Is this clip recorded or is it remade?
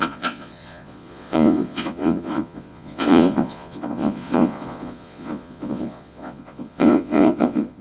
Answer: remade